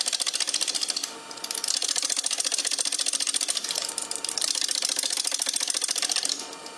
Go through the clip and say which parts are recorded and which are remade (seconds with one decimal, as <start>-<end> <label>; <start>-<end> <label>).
0.0-6.8 recorded